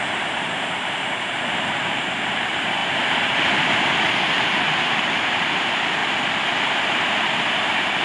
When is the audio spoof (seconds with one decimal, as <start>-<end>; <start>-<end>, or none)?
0.0-6.0; 6.8-8.0